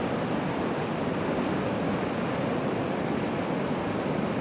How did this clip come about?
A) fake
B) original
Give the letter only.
B